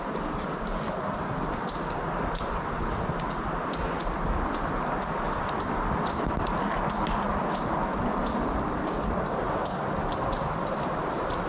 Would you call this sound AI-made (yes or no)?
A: no